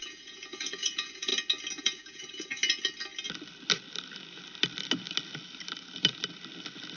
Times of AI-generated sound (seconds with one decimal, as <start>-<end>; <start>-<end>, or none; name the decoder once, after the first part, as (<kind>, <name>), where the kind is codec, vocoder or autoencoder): 0.0-1.3 (vocoder, Vocos); 1.8-2.6